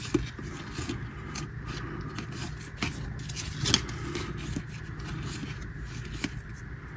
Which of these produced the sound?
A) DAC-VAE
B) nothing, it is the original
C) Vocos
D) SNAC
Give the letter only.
B